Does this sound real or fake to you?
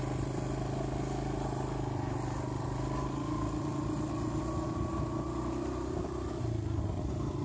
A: real